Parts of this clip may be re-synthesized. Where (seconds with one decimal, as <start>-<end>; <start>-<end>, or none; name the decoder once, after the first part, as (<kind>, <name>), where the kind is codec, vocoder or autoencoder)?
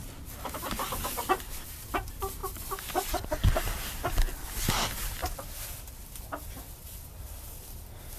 none